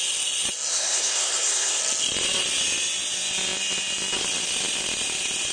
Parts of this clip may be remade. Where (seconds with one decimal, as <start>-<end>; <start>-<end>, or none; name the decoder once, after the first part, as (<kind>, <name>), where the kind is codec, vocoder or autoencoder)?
0.7-1.8 (codec, SNAC)